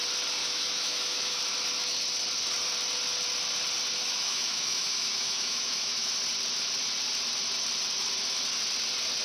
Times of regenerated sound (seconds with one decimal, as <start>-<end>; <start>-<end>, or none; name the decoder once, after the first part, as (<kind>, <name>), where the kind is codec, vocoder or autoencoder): 0.4-1.4 (autoencoder, DAC-VAE); 4.0-6.1